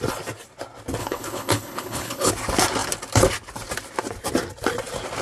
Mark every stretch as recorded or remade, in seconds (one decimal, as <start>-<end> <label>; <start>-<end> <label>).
0.0-1.0 recorded; 1.0-2.3 remade; 2.3-5.2 recorded